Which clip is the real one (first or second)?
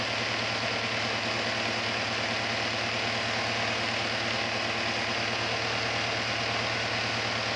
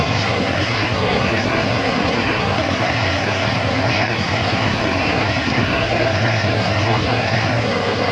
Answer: first